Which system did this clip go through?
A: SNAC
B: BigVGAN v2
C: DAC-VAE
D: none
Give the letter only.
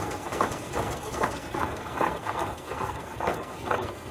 A